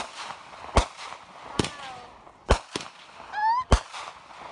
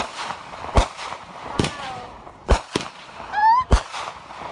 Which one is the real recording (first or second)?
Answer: first